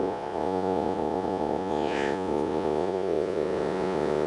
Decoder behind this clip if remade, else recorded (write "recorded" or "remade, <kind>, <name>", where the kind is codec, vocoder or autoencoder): remade, vocoder, Vocos